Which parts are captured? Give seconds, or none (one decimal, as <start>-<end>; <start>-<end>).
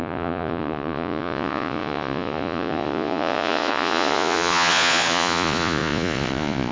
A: none